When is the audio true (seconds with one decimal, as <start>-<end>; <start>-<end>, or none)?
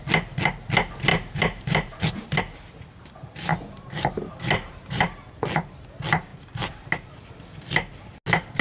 0.0-1.1; 2.4-3.5; 5.0-8.6